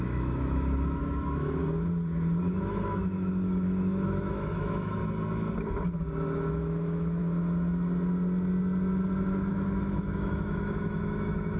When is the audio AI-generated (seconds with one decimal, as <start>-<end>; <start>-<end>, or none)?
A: 0.0-1.6; 2.4-5.0; 6.5-7.2; 9.5-11.6

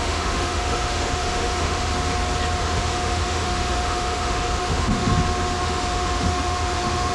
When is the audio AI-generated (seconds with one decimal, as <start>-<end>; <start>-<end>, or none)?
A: 0.0-1.9; 2.6-5.1; 5.6-7.1